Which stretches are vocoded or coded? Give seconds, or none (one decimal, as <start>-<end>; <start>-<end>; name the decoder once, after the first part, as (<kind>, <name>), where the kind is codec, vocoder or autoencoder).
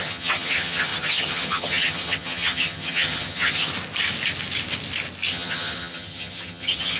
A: 0.0-3.7 (vocoder, HiFi-GAN); 5.3-7.0